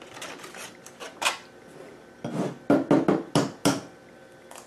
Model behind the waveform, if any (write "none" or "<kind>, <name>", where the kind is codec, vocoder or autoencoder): none